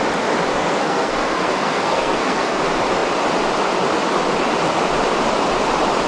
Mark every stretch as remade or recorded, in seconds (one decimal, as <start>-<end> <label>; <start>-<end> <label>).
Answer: 0.0-0.5 recorded; 0.5-2.6 remade; 2.6-6.1 recorded